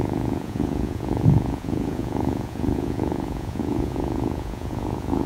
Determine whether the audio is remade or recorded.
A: remade